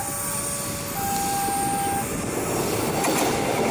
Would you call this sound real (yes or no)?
yes